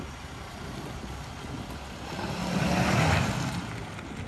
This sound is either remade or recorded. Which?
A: recorded